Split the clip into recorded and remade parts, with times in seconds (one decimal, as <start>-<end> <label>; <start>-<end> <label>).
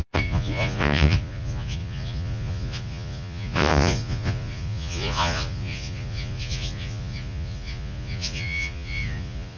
0.0-9.6 remade